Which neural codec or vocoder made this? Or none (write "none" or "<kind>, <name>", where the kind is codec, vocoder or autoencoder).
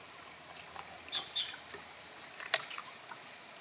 none